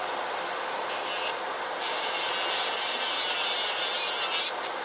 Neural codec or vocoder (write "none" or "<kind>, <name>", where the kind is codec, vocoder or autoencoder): none